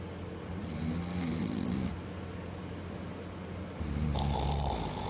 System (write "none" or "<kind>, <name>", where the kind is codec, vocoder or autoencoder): none